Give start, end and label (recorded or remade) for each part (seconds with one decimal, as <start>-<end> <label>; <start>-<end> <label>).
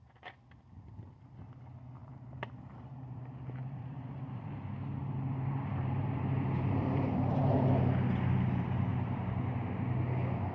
0.0-2.0 recorded; 2.0-4.3 remade; 4.3-5.0 recorded; 5.0-7.6 remade; 7.6-8.9 recorded; 8.9-9.4 remade; 9.4-10.5 recorded